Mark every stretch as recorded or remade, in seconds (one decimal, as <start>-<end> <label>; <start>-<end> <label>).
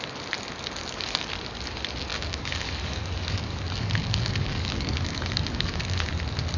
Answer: 0.0-0.8 recorded; 0.8-1.3 remade; 1.3-2.1 recorded; 2.1-6.1 remade; 6.1-6.6 recorded